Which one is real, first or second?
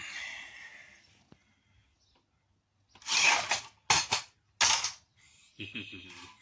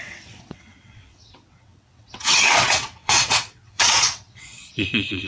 first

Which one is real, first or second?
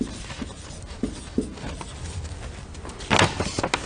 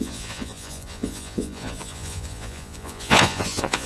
first